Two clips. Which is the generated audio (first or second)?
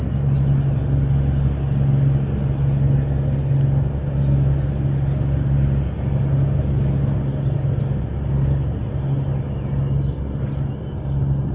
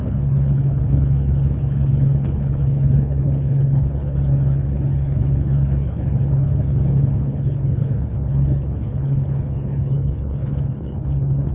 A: second